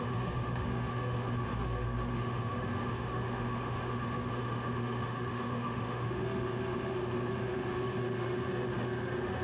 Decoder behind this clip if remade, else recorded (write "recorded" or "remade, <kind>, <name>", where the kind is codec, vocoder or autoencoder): remade, autoencoder, DAC-VAE